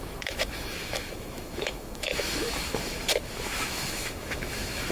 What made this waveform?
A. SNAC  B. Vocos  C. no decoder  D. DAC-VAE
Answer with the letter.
D